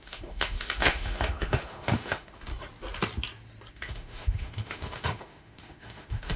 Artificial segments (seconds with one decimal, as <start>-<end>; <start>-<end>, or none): 0.0-2.5; 3.7-6.4